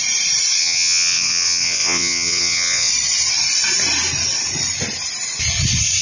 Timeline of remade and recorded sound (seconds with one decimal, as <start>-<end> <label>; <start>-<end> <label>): 0.0-0.6 recorded; 0.6-2.9 remade; 2.9-6.0 recorded